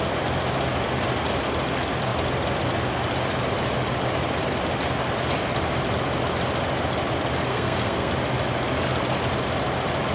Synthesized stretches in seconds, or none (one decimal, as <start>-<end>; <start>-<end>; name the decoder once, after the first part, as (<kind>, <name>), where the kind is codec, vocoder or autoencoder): 7.5-8.1 (codec, SNAC)